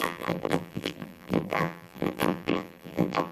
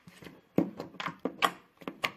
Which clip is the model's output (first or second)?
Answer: first